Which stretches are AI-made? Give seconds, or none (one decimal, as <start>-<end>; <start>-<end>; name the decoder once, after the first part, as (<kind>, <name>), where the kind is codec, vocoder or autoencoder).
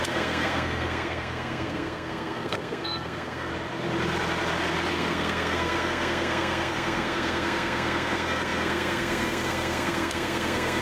0.0-3.5 (codec, SNAC); 4.9-10.8